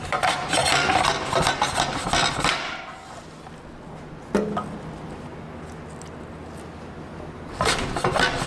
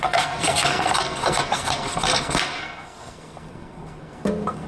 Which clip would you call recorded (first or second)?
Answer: first